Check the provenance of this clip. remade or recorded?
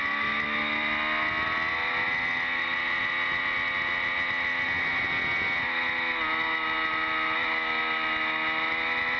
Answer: recorded